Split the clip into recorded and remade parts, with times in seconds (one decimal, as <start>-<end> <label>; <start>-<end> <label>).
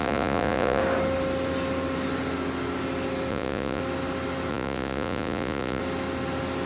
0.0-0.8 remade; 0.8-3.3 recorded; 3.3-3.8 remade; 3.8-4.5 recorded; 4.5-5.8 remade; 5.8-6.7 recorded